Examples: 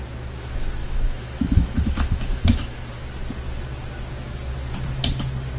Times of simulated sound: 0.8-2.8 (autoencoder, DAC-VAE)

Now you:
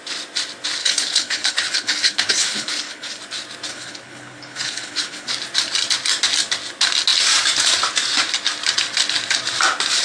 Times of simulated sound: 0.8-3.2 (codec, HILCodec); 3.7-5.3

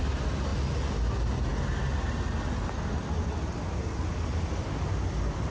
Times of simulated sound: none

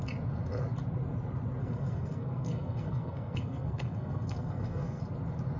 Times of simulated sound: 1.6-5.0 (codec, SNAC)

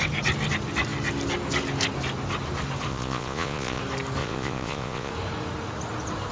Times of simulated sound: 2.9-3.8 (vocoder, Vocos); 4.2-5.1